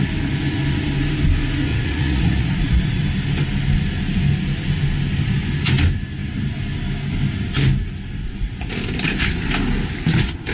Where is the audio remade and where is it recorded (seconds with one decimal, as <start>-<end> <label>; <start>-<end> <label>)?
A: 0.0-1.7 recorded; 1.7-3.0 remade; 3.0-8.2 recorded; 8.2-8.7 remade; 8.7-10.5 recorded